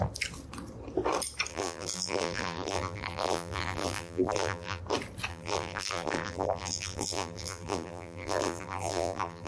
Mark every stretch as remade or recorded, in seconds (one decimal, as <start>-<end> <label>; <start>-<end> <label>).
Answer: 0.0-1.5 recorded; 1.5-4.8 remade; 4.8-5.3 recorded; 5.3-9.5 remade